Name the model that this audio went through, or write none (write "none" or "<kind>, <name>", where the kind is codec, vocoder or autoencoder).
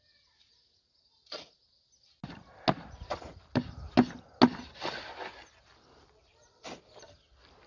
none